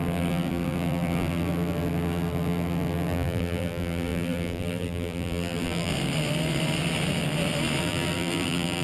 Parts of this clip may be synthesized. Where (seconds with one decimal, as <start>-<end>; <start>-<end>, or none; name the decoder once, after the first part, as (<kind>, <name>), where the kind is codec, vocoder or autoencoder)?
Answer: 0.0-5.9 (vocoder, BigVGAN v2); 7.8-8.8